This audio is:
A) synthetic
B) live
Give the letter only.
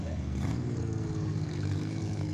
A